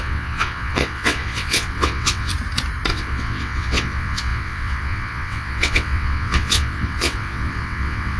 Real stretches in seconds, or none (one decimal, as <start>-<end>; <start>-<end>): 2.3-2.9